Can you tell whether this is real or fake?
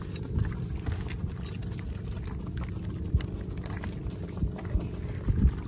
real